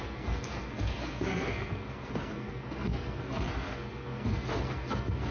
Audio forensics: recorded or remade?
remade